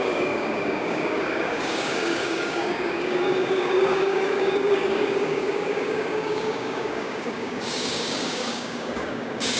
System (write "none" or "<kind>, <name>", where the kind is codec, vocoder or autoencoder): codec, DAC